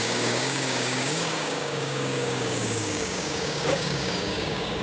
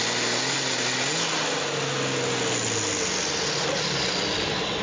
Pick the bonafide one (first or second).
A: second